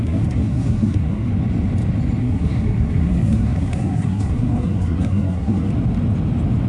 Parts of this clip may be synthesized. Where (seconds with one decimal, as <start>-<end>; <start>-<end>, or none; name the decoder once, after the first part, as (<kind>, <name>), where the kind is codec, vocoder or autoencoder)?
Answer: 0.0-1.3 (codec, SNAC); 2.2-5.7